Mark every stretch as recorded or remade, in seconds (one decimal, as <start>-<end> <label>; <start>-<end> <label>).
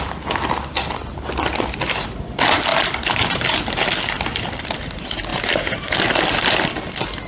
0.0-2.7 recorded; 2.7-3.6 remade; 3.6-5.3 recorded; 5.3-6.3 remade; 6.3-7.3 recorded